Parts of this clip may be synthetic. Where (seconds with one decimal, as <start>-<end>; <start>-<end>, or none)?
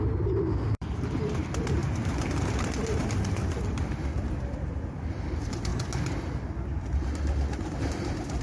0.0-1.8; 2.3-5.7; 7.9-8.4